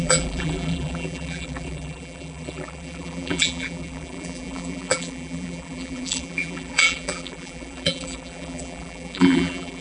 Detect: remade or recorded remade